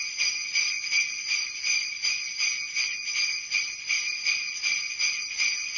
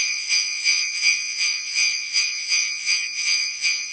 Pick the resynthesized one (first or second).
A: second